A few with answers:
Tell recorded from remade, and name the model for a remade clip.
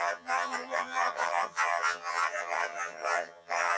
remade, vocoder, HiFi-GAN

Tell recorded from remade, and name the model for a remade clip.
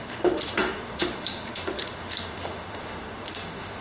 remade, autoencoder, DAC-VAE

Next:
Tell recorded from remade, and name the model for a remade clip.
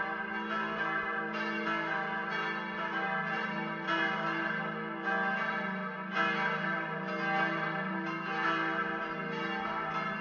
recorded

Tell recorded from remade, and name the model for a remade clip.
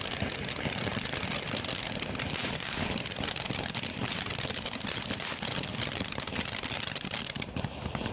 remade, vocoder, BigVGAN v2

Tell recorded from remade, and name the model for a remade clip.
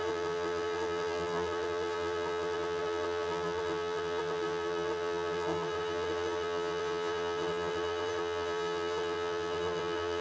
remade, vocoder, BigVGAN v2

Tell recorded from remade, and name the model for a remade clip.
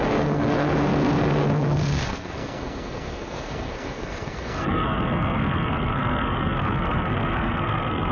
remade, codec, SNAC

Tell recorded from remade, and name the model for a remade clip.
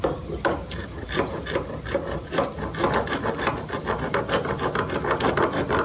recorded